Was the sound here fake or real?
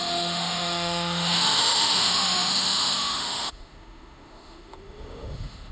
fake